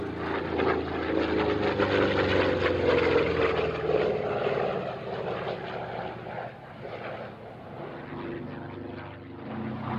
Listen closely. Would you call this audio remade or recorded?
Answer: recorded